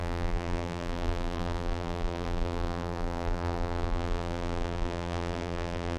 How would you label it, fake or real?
fake